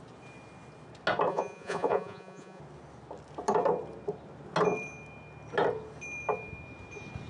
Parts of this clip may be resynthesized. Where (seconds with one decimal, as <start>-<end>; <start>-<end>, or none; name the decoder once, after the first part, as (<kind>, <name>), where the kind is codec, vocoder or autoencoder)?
1.3-2.6 (vocoder, Vocos)